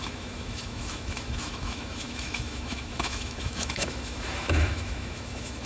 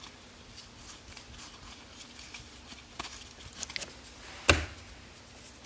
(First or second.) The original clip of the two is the second